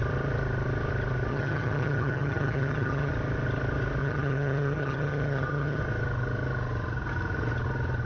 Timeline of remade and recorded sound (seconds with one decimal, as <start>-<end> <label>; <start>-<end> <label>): 0.0-1.3 recorded; 1.3-3.1 remade; 3.1-4.0 recorded; 4.0-5.8 remade; 5.8-8.1 recorded